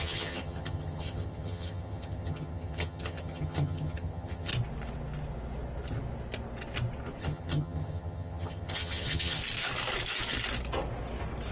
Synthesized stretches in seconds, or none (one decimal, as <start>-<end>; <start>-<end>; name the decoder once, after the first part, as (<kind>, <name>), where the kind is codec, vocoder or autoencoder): 0.0-4.5 (vocoder, HiFi-GAN); 7.2-9.4

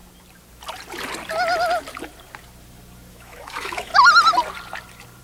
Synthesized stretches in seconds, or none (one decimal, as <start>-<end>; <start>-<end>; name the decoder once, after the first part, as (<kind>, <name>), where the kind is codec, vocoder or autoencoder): 3.1-3.9 (autoencoder, DAC-VAE)

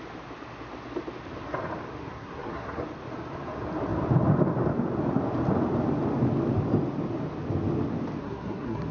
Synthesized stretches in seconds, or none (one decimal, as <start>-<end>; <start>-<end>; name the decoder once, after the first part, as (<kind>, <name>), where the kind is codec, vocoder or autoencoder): 2.0-2.8 (codec, SNAC); 8.2-8.9

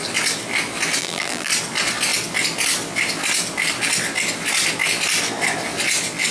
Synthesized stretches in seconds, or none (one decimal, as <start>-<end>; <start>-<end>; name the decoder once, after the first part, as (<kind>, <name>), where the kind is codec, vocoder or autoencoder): 1.0-1.5 (vocoder, BigVGAN v2)

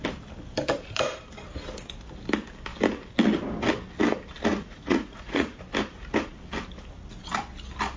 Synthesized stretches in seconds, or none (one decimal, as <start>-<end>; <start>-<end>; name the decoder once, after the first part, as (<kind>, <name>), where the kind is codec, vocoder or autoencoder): 4.5-5.6 (vocoder, Vocos)

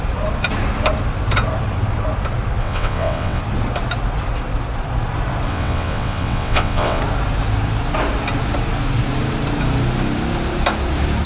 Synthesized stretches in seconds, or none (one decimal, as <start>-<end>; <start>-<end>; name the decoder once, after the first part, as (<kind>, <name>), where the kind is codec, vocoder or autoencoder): 2.6-3.4 (vocoder, WaveNeXt); 5.5-7.0

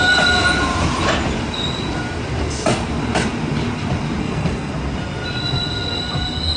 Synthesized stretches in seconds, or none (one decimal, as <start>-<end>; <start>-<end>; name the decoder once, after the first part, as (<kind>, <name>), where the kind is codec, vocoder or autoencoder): 4.2-4.7 (codec, SNAC)

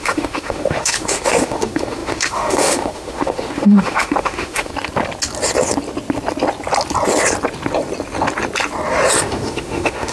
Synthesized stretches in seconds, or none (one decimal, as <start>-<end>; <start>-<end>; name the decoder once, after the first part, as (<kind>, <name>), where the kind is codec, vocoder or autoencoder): 0.0-4.7 (autoencoder, DAC-VAE); 9.2-10.1